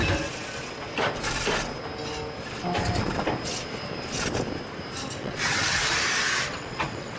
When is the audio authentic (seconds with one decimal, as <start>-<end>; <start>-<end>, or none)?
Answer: 0.0-5.2; 5.9-6.5